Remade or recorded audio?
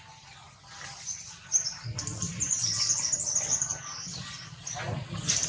recorded